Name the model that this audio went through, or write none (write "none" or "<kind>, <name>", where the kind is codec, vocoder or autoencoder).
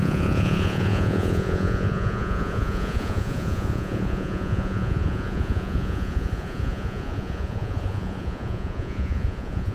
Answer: vocoder, Vocos